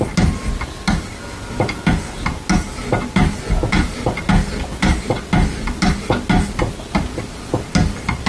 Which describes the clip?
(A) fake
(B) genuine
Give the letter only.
B